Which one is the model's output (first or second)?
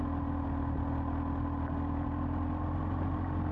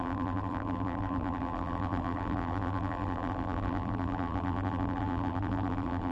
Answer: second